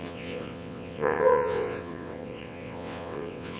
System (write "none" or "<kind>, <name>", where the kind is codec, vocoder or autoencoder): vocoder, WaveNeXt